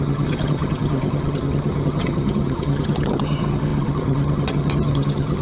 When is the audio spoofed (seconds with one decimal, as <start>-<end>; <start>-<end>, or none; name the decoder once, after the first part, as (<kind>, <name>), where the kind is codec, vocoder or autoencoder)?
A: 0.0-5.4 (vocoder, HiFi-GAN)